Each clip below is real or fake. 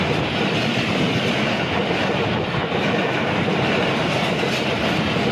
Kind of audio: real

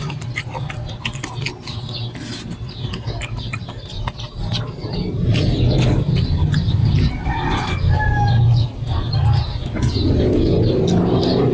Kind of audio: real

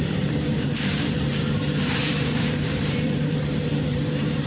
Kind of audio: fake